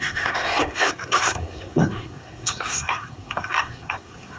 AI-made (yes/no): yes